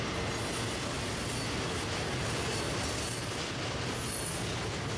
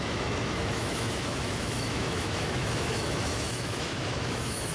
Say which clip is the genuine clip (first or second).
first